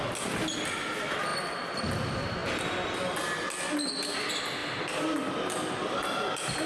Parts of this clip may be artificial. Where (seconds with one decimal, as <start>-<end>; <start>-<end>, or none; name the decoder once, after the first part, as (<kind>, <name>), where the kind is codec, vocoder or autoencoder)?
none